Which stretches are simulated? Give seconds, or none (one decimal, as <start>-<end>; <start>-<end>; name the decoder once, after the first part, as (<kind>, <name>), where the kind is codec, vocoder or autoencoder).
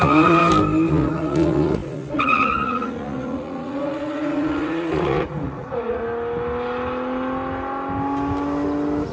0.0-0.4 (vocoder, Vocos); 0.9-6.0